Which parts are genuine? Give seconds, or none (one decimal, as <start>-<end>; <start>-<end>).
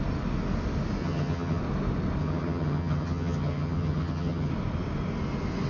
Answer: 0.0-1.0; 1.6-2.2; 4.5-5.7